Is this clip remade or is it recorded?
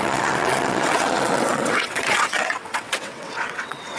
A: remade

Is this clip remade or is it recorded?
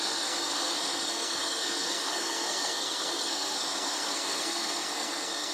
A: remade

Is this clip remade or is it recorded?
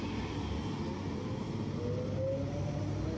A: recorded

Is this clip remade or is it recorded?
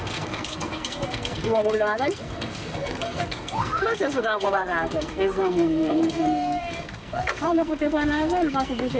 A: remade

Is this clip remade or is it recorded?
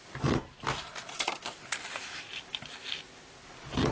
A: recorded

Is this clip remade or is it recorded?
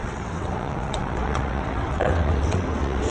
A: remade